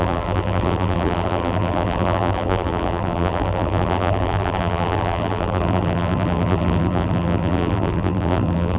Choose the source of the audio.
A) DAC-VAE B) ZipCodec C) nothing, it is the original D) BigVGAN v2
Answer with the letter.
D